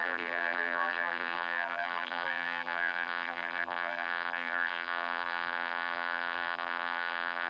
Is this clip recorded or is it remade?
remade